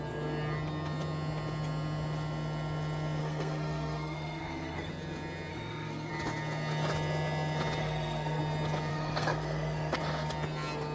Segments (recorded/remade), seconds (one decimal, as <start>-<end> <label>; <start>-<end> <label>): 0.0-3.2 recorded; 3.2-4.9 remade; 4.9-5.5 recorded; 5.5-6.1 remade; 6.1-7.8 recorded; 7.8-8.4 remade; 8.4-8.9 recorded; 8.9-10.0 remade; 10.0-10.9 recorded